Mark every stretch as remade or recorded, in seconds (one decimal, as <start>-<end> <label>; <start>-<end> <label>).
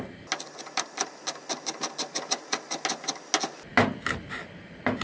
0.0-5.0 recorded